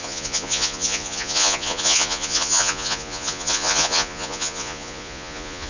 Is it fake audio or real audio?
fake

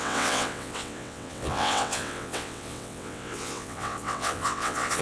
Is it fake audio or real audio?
fake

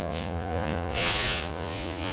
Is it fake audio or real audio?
fake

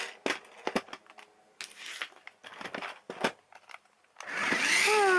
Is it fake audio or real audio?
real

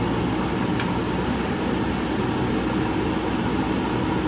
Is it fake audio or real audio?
real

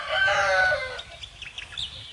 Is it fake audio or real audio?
real